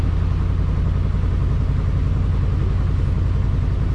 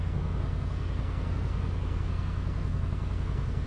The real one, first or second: first